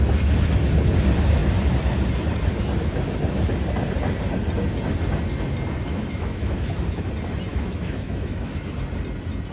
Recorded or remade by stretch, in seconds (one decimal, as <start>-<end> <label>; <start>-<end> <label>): 0.0-5.9 recorded; 5.9-7.1 remade; 7.1-7.5 recorded; 7.5-8.7 remade; 8.7-9.5 recorded